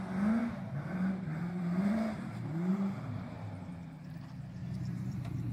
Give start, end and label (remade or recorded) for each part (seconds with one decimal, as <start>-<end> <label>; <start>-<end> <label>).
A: 0.0-0.4 recorded; 0.4-3.7 remade; 3.7-4.6 recorded; 4.6-5.5 remade

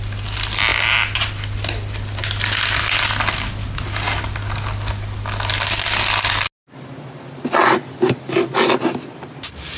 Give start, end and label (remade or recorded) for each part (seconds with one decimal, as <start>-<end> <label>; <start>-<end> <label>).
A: 0.0-9.8 recorded

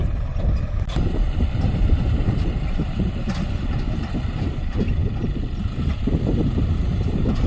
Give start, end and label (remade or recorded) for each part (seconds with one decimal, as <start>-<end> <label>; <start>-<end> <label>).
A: 0.0-3.2 remade; 3.2-4.5 recorded; 4.5-5.0 remade; 5.0-5.8 recorded; 5.8-7.5 remade